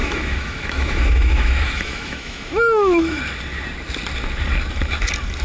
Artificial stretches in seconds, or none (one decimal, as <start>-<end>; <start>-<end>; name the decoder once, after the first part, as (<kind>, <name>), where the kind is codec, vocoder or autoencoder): 0.0-3.2 (autoencoder, DAC-VAE)